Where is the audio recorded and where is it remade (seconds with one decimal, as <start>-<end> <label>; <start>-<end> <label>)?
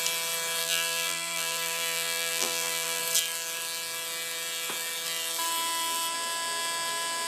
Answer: 0.0-0.6 recorded; 0.6-3.0 remade; 3.0-7.3 recorded